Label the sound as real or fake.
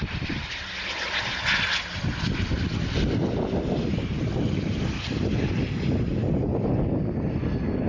real